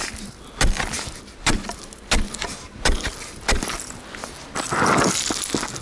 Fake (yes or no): no